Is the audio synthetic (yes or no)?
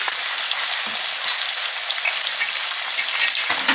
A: no